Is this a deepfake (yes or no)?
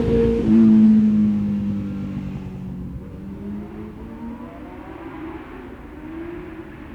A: no